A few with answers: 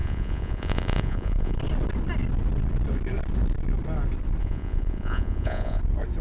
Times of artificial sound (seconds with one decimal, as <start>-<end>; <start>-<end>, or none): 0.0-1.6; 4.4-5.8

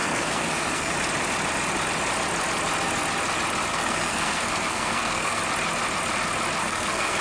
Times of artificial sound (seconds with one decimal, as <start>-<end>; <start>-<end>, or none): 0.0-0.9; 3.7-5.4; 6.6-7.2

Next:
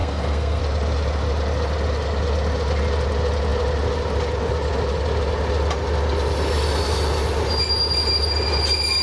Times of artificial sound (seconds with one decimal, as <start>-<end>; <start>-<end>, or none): 0.0-0.6

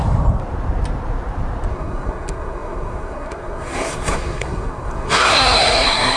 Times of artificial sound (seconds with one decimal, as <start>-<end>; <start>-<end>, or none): 1.7-6.2

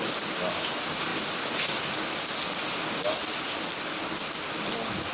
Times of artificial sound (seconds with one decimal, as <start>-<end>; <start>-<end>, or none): none

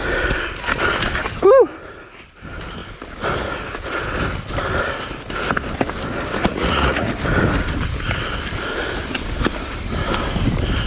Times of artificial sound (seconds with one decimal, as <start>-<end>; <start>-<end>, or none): 6.5-7.1

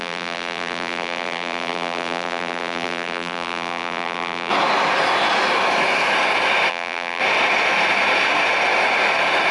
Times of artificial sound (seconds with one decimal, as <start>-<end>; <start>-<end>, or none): 0.0-4.5; 6.7-7.2